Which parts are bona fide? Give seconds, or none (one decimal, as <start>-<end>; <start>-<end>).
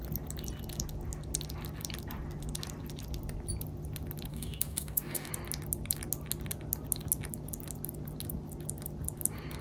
0.0-4.3; 5.3-9.6